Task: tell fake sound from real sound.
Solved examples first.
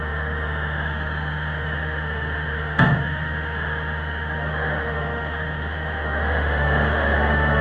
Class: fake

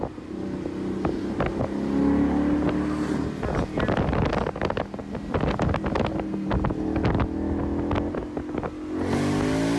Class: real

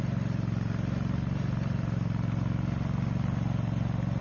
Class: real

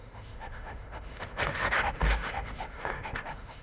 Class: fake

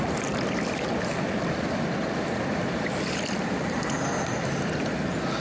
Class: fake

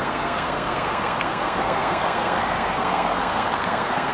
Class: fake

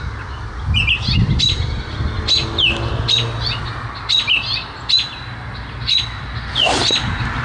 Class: real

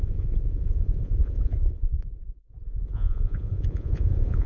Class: fake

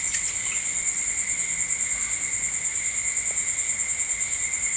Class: real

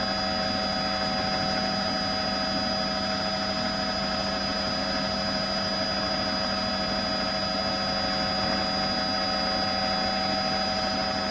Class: real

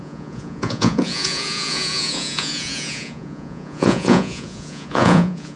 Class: fake